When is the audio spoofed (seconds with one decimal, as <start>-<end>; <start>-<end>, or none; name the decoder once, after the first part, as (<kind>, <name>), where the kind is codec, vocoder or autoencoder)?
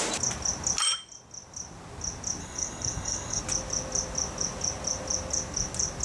2.4-3.4 (codec, DAC)